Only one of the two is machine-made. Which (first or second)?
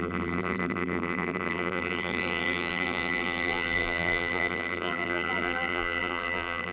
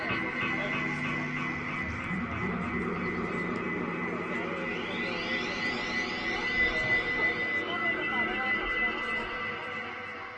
first